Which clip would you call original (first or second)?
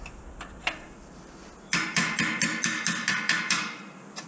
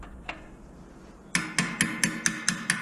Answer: second